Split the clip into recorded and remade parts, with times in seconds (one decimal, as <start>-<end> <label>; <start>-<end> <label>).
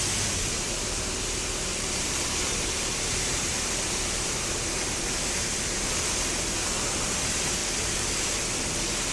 0.0-1.7 recorded; 1.7-5.3 remade; 5.3-7.6 recorded; 7.6-8.5 remade; 8.5-9.1 recorded